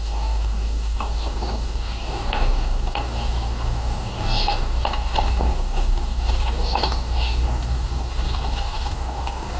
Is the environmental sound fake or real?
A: fake